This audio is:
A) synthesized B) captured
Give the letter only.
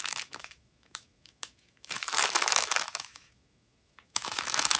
A